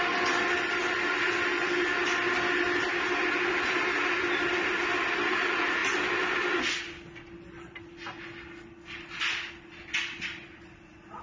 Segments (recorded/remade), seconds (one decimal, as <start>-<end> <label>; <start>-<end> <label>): 0.0-11.2 recorded